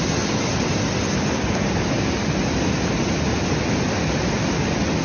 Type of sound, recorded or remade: recorded